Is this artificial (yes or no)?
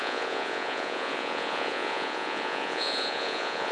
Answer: yes